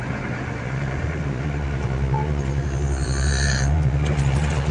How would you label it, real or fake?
fake